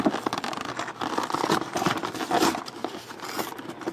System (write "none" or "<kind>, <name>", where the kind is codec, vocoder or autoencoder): none